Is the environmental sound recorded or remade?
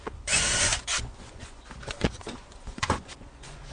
remade